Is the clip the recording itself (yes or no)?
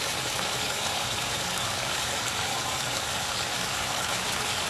no